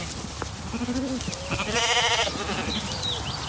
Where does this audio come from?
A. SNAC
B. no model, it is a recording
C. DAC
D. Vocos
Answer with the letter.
B